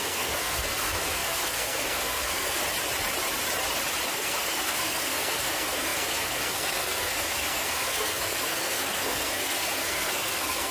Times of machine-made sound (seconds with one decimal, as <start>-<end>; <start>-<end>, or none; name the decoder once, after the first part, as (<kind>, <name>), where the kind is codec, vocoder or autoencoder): 0.0-2.6 (codec, SNAC); 4.1-10.7